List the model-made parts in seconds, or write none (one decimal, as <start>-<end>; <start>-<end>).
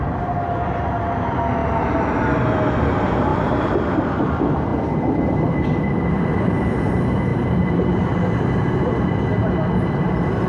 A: 3.3-4.2; 7.3-8.2